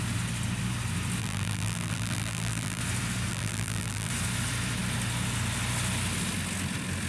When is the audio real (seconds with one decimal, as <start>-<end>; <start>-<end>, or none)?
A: 0.0-1.2; 2.8-3.3; 4.1-7.1